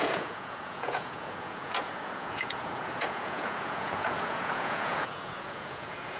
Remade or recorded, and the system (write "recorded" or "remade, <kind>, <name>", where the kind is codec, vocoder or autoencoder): remade, vocoder, Vocos